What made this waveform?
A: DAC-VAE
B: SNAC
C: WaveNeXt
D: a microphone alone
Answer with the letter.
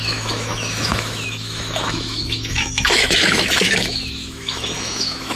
A